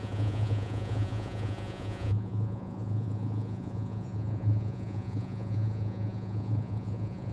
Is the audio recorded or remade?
remade